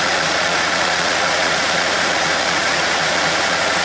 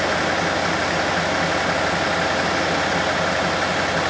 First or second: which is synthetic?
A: first